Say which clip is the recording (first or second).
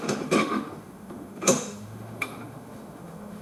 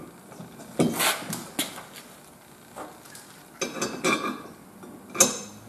second